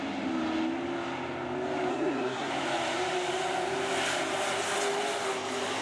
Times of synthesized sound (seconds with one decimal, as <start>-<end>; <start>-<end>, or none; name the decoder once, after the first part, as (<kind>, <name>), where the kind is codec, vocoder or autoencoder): 1.9-2.5 (codec, SNAC)